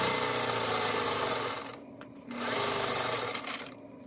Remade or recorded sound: recorded